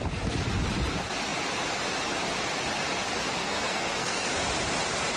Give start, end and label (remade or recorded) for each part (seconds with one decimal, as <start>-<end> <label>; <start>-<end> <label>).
0.0-3.4 recorded; 3.4-4.3 remade; 4.3-5.2 recorded